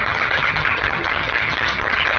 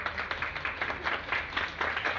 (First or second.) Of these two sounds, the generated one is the first